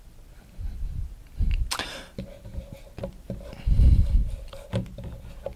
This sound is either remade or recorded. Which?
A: recorded